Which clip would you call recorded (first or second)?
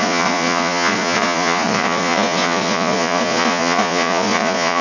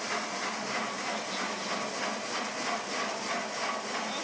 second